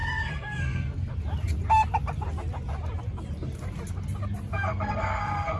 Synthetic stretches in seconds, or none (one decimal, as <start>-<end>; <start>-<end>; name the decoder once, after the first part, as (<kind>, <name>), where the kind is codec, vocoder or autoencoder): 0.0-1.1 (codec, SNAC); 4.5-5.6